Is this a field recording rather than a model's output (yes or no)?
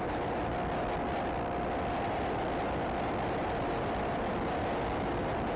yes